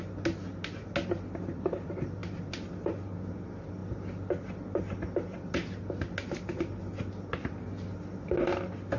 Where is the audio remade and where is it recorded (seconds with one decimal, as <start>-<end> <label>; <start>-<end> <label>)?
0.0-9.0 recorded